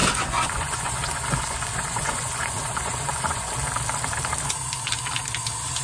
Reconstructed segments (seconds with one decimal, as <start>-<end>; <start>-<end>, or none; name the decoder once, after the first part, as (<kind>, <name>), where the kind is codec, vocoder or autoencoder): 0.0-3.5 (vocoder, Vocos)